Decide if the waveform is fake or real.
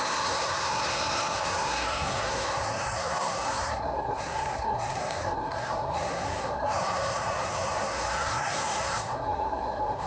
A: fake